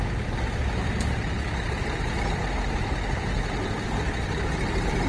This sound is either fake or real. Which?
real